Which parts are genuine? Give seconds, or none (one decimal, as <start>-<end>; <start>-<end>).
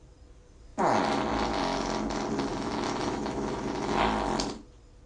0.0-2.5; 4.0-5.1